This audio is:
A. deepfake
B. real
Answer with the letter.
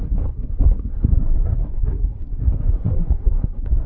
A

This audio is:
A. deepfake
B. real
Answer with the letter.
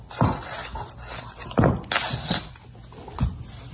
B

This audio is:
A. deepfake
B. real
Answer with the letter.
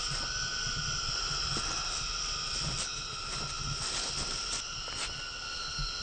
B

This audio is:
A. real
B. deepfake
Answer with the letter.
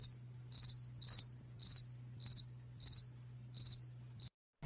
A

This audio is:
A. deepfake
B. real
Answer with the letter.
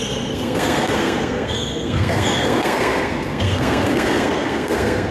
A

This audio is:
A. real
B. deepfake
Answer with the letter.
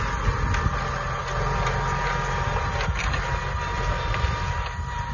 A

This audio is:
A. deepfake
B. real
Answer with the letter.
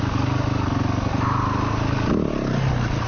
B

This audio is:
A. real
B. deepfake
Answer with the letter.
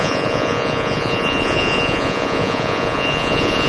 B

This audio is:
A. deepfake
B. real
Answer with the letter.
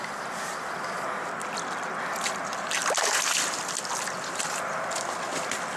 B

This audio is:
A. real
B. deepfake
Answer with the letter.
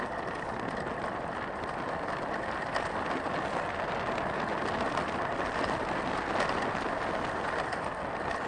A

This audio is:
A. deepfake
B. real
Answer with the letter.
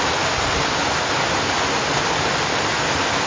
B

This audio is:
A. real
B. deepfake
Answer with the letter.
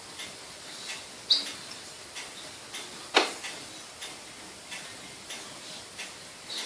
A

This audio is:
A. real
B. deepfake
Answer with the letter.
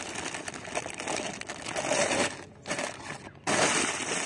B